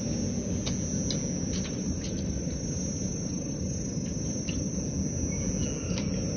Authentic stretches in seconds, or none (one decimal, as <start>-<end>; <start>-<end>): 0.0-6.4